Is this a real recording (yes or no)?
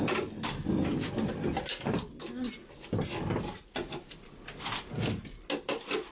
yes